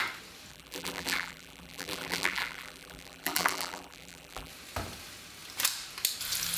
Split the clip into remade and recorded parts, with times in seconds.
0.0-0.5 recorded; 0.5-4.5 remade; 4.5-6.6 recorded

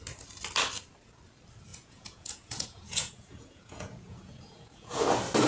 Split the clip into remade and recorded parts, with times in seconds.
0.0-1.7 recorded; 1.7-5.0 remade; 5.0-5.5 recorded